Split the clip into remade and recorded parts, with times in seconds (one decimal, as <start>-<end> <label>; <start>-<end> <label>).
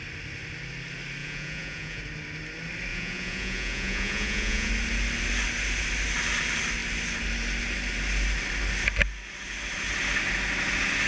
0.0-1.2 recorded; 1.2-2.0 remade; 2.0-2.9 recorded; 2.9-4.7 remade; 4.7-11.1 recorded